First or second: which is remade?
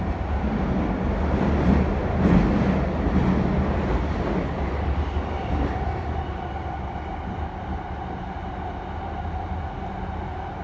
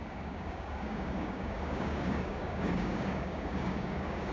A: second